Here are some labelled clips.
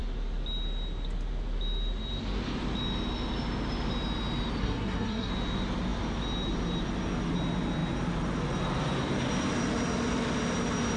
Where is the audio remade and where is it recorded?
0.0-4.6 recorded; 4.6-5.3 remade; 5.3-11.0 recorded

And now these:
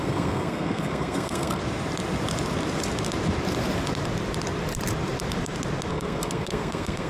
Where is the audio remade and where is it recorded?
0.0-1.6 remade; 1.6-5.9 recorded; 5.9-7.1 remade

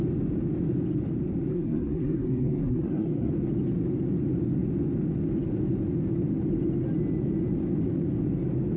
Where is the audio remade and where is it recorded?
0.0-1.5 recorded; 1.5-3.3 remade; 3.3-8.8 recorded

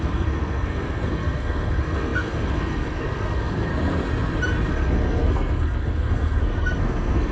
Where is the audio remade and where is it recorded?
0.0-3.7 remade; 3.7-4.7 recorded; 4.7-7.3 remade

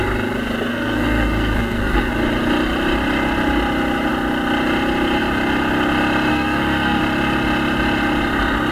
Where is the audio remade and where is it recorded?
0.0-0.7 recorded; 0.7-2.1 remade; 2.1-6.3 recorded; 6.3-7.0 remade; 7.0-8.7 recorded

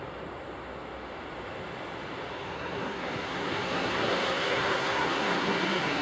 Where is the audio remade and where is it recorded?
0.0-2.3 recorded; 2.3-6.0 remade